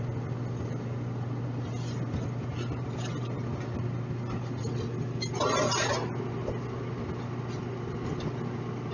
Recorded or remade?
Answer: recorded